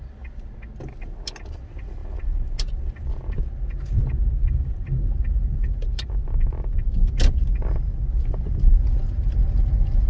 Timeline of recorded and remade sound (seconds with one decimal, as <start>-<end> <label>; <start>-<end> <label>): 0.0-10.1 recorded